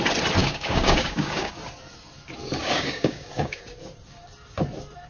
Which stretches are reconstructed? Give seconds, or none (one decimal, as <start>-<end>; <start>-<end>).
0.4-1.5; 2.6-3.6